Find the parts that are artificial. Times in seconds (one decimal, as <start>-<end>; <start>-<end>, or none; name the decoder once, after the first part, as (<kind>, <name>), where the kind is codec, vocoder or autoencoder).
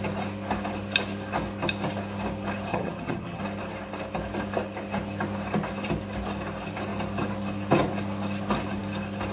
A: 2.7-3.4 (vocoder, HiFi-GAN)